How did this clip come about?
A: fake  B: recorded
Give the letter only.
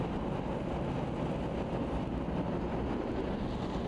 B